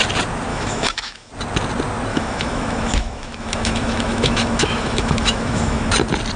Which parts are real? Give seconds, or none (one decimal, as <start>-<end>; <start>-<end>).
0.0-0.5; 1.3-2.1; 5.9-6.4